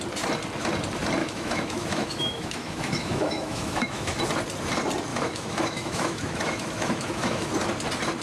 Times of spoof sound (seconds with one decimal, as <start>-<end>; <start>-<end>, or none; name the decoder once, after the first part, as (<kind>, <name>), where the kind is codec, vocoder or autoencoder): 1.2-4.1 (autoencoder, DAC-VAE); 5.1-7.5